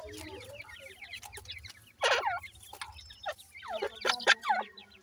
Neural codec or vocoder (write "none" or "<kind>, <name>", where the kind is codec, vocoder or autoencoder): none